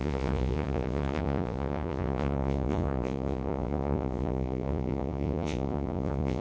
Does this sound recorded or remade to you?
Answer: remade